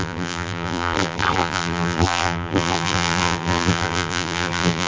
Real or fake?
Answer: fake